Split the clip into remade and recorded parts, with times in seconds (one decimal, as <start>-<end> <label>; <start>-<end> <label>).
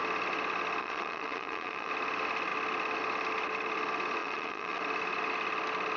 0.0-0.8 recorded; 0.8-1.9 remade; 1.9-4.2 recorded; 4.2-4.8 remade; 4.8-6.0 recorded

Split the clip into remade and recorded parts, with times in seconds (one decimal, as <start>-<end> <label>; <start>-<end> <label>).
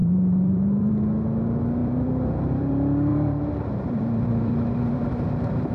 0.0-0.9 remade; 0.9-1.8 recorded; 1.8-2.7 remade; 2.7-3.1 recorded; 3.1-5.7 remade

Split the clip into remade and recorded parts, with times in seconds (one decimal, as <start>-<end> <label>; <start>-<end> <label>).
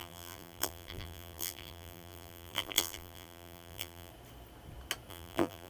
0.0-4.1 remade; 4.1-5.1 recorded; 5.1-5.7 remade